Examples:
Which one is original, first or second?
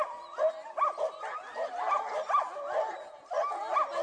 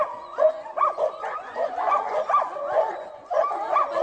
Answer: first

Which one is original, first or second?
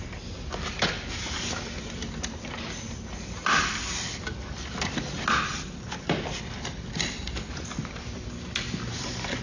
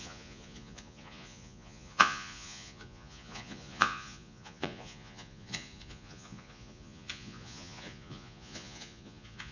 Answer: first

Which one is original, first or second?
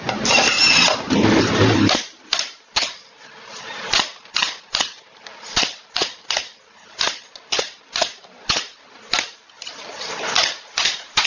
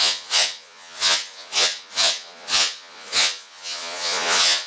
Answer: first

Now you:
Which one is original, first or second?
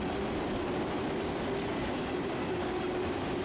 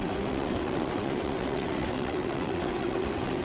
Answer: first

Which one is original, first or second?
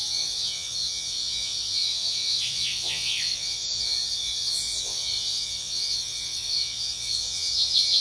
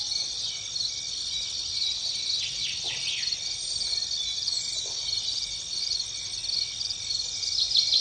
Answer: second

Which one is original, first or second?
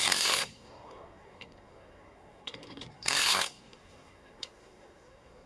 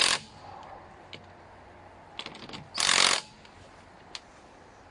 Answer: second